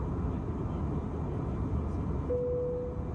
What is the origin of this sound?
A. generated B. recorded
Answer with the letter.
B